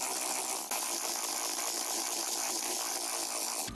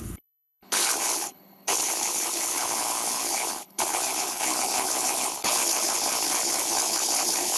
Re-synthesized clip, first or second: second